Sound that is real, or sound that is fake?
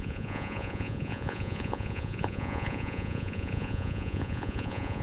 fake